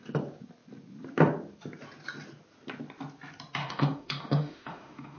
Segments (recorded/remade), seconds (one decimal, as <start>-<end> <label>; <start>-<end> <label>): 0.0-3.6 recorded; 3.6-5.2 remade